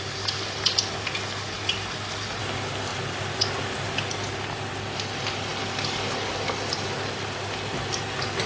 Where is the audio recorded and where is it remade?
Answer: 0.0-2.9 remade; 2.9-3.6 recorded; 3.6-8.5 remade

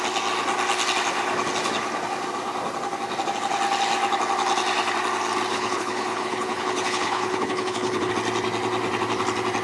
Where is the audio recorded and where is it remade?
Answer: 0.0-5.5 recorded; 5.5-8.1 remade; 8.1-9.6 recorded

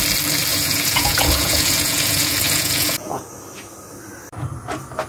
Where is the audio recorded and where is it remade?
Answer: 0.0-0.5 recorded; 0.5-3.2 remade; 3.2-5.1 recorded